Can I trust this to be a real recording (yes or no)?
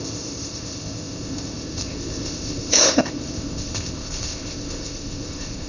no